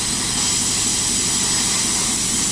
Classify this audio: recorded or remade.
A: recorded